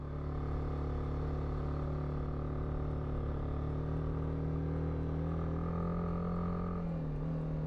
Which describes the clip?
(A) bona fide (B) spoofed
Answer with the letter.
A